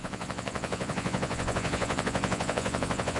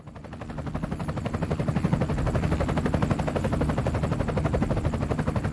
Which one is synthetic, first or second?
first